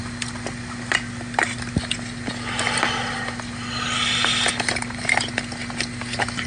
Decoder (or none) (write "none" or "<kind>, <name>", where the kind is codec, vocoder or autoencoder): none